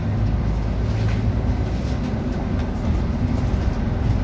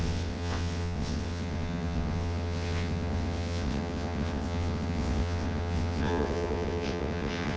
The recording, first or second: first